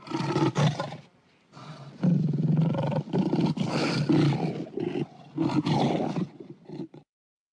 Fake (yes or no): no